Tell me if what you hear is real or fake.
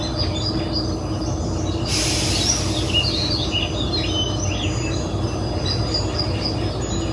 real